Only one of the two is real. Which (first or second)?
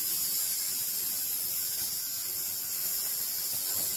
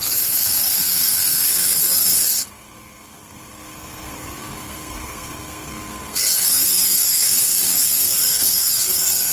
first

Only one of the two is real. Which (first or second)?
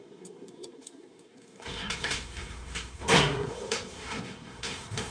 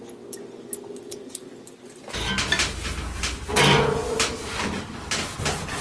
second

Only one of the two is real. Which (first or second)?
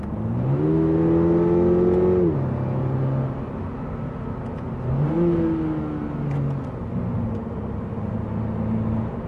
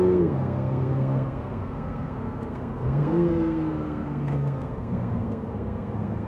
first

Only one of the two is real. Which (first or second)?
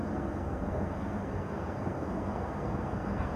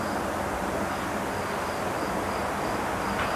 second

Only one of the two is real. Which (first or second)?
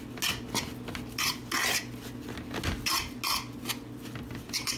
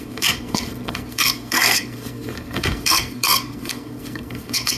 first